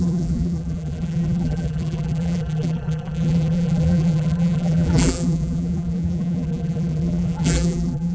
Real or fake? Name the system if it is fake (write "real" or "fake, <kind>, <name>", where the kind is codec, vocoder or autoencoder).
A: fake, vocoder, BigVGAN v2